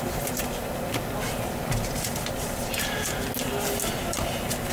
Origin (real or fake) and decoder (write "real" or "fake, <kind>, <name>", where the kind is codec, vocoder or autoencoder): real